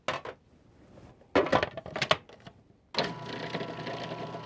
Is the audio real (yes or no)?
yes